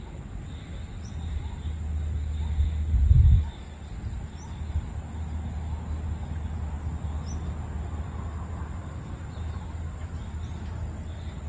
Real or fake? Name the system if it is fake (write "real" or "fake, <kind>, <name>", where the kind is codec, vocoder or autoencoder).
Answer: real